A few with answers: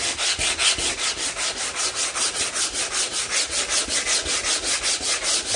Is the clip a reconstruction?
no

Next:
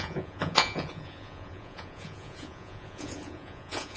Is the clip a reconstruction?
yes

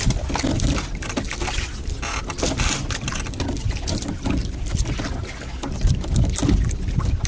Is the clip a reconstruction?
no